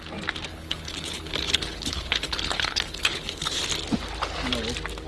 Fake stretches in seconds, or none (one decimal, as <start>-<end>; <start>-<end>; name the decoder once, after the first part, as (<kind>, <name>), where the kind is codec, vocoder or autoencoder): 0.5-3.6 (codec, HILCodec)